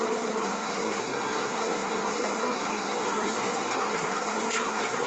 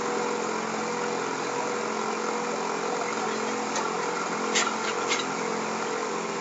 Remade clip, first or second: first